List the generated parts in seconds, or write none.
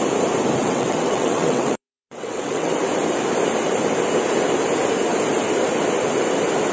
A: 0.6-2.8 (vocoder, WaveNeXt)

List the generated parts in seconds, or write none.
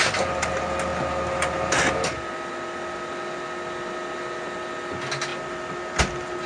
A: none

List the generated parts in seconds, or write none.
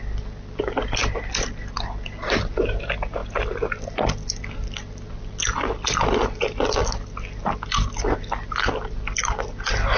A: none